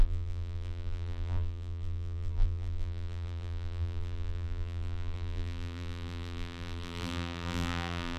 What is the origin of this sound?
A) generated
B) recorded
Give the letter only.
A